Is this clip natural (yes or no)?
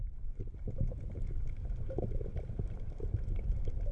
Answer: no